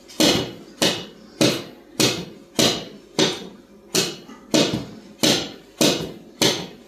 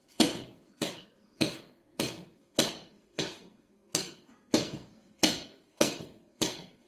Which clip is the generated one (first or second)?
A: second